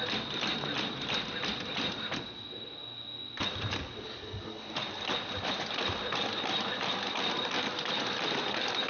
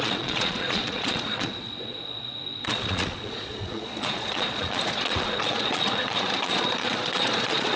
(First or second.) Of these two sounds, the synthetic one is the second